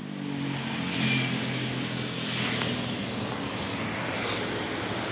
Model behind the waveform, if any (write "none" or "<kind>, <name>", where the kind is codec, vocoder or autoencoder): none